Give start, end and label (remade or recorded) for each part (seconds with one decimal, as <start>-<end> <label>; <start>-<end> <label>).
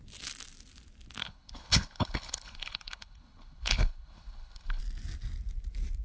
0.0-1.2 recorded; 1.2-4.8 remade; 4.8-6.0 recorded